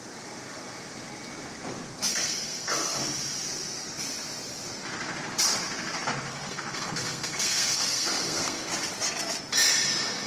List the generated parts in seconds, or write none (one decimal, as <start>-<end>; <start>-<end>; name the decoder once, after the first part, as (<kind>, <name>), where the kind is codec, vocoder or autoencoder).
2.1-3.0 (codec, SNAC); 6.3-8.7